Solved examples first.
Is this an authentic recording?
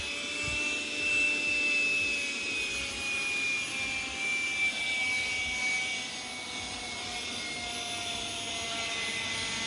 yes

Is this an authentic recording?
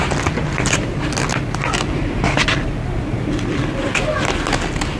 yes